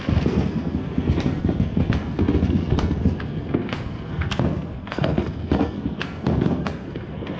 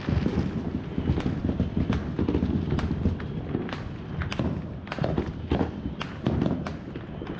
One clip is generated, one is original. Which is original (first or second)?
second